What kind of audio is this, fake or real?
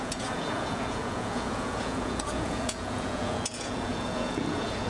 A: fake